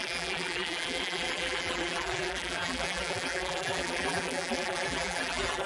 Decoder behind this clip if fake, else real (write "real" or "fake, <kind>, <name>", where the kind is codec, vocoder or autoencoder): fake, vocoder, BigVGAN v2